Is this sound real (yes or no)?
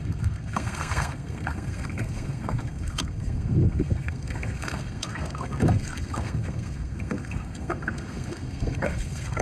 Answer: no